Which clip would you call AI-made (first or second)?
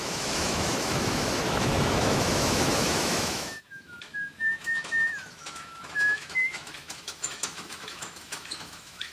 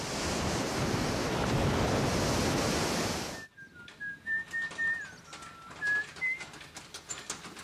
first